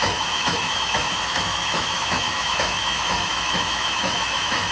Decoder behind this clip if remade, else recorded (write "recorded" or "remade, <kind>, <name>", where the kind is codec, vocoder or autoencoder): remade, autoencoder, DAC-VAE